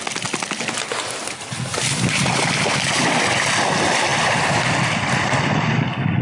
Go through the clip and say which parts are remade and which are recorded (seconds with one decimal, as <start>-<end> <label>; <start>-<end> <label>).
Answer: 0.0-6.2 recorded